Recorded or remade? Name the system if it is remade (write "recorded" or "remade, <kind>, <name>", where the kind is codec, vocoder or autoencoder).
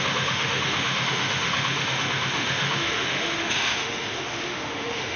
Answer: remade, autoencoder, DAC-VAE